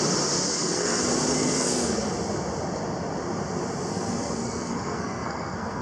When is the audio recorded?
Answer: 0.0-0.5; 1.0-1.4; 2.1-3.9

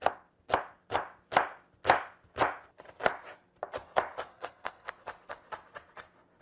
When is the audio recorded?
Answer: 0.0-4.3; 4.9-6.4

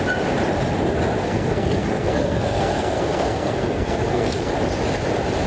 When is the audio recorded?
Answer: 0.0-1.2; 4.5-5.5

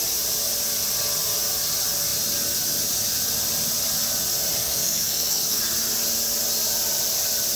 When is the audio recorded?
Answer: 0.0-4.6; 5.6-7.6

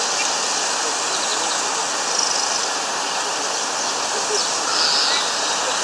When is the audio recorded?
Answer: 0.0-5.8

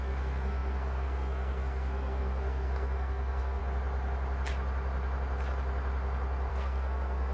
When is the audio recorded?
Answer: 3.6-6.5